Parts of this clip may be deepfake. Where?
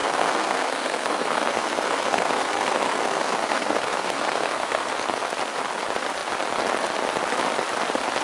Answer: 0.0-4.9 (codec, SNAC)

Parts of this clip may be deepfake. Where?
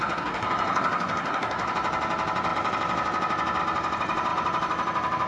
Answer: 0.0-1.7 (codec, SNAC)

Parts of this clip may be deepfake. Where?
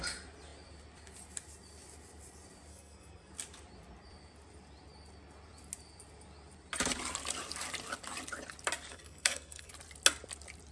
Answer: 2.7-3.3 (codec, SNAC); 8.9-9.7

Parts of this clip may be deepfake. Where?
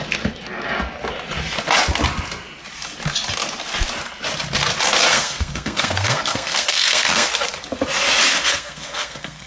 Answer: 5.1-7.3 (codec, SNAC); 8.3-9.5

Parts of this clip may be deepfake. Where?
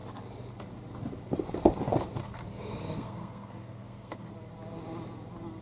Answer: 2.2-4.3 (codec, SNAC)